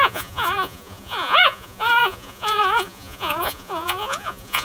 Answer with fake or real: fake